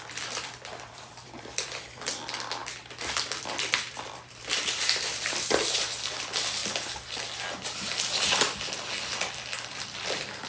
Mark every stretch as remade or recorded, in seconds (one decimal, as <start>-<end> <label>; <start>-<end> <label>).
0.0-2.6 remade; 2.6-3.4 recorded; 3.4-6.6 remade; 6.6-9.7 recorded; 9.7-10.5 remade